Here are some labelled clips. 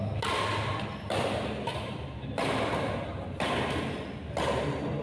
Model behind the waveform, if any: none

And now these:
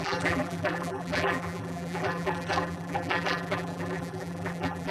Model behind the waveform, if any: vocoder, BigVGAN v2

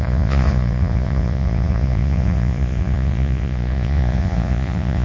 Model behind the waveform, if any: vocoder, Vocos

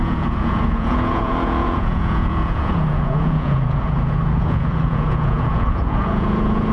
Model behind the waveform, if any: vocoder, Vocos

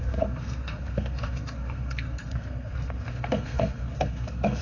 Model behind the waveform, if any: codec, SNAC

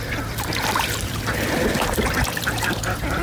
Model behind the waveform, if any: vocoder, BigVGAN v2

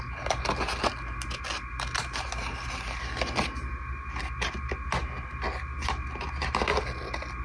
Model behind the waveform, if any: none